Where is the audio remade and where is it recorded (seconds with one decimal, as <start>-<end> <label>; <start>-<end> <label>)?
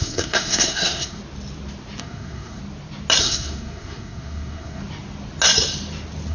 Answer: 0.0-1.2 remade; 1.2-2.0 recorded; 2.0-2.6 remade; 2.6-3.2 recorded; 3.2-4.8 remade; 4.8-6.3 recorded